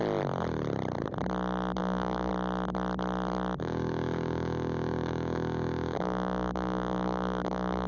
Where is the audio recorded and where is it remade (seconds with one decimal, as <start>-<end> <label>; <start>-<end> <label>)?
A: 0.0-1.8 recorded; 1.8-2.3 remade; 2.3-3.6 recorded; 3.6-7.9 remade